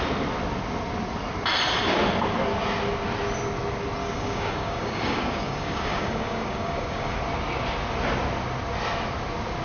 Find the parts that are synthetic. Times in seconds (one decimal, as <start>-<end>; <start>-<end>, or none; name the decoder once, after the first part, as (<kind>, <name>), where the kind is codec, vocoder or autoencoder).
4.0-7.2 (codec, DAC)